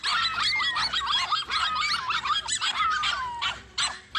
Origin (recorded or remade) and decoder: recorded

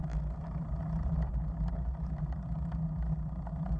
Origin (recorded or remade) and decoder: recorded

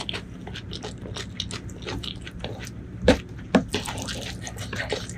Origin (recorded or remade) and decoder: recorded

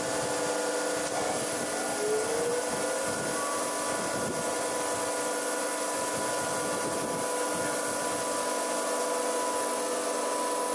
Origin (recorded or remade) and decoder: recorded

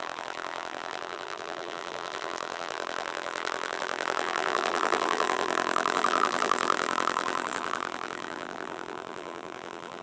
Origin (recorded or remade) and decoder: remade, vocoder, BigVGAN v2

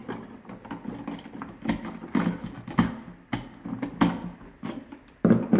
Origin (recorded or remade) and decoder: recorded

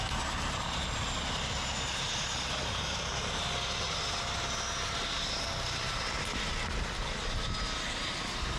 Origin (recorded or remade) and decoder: recorded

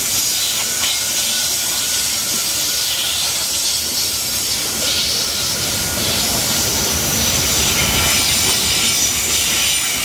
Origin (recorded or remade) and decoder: recorded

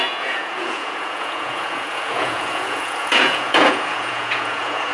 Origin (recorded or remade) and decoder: remade, vocoder, Vocos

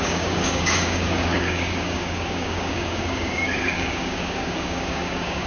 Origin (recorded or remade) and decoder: remade, codec, DAC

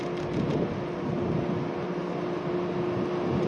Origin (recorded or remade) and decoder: recorded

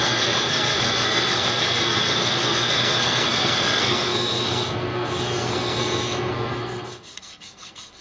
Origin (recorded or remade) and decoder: remade, codec, SNAC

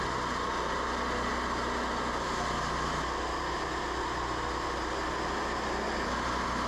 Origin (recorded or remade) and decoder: recorded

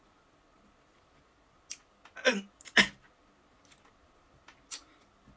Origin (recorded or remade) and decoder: recorded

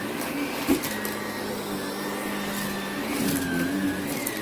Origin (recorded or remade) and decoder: recorded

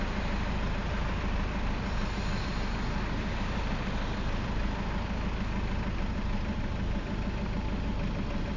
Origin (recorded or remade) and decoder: recorded